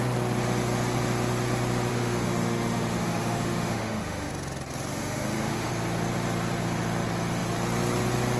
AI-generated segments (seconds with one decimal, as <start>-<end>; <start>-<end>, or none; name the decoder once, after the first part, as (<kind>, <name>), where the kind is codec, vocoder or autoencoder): 1.9-4.3 (autoencoder, DAC-VAE); 4.9-5.7